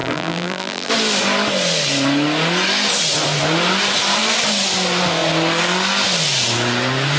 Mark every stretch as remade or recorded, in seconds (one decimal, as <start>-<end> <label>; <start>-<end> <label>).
0.0-0.9 remade; 0.9-7.2 recorded